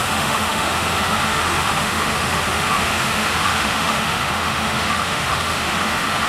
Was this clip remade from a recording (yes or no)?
yes